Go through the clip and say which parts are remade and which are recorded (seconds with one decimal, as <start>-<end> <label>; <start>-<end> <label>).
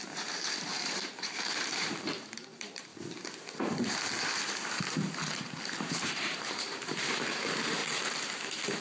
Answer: 0.0-2.9 remade; 2.9-5.8 recorded; 5.8-7.8 remade; 7.8-8.8 recorded